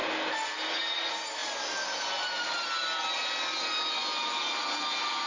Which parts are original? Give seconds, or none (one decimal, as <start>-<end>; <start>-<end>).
0.0-5.3